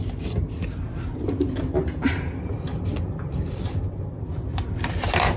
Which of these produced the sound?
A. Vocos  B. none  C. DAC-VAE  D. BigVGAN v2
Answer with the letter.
B